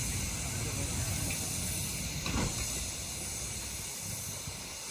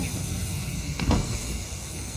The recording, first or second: first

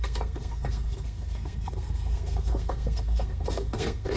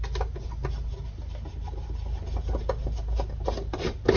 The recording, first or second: second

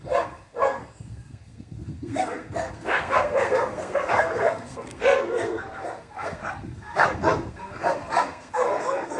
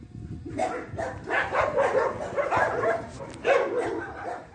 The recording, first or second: second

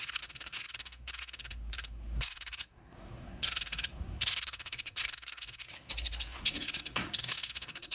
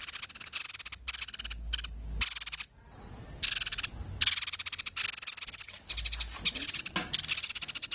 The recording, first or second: second